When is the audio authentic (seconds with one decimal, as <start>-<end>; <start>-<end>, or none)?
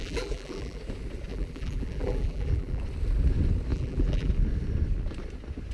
0.8-1.3; 2.8-3.7; 4.3-5.7